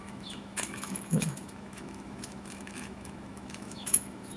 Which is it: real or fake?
fake